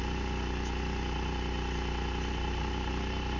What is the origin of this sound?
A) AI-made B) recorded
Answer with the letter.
B